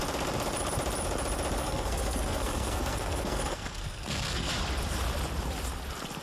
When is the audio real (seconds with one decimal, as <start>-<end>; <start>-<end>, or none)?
0.0-1.6; 4.5-6.2